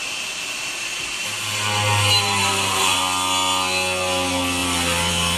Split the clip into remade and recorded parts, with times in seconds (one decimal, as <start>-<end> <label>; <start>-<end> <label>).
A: 0.0-3.0 remade; 3.0-4.6 recorded; 4.6-5.4 remade

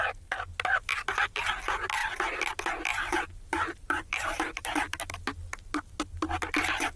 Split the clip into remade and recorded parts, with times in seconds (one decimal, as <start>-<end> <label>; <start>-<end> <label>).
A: 0.0-2.0 recorded; 2.0-2.5 remade; 2.5-2.9 recorded; 2.9-5.0 remade; 5.0-7.0 recorded